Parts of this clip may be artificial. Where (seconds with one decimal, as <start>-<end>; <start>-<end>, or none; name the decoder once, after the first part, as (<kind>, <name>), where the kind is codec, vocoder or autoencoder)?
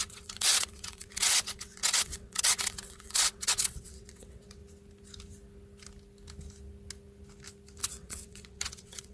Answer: 0.0-4.6 (vocoder, WaveNeXt); 7.8-9.1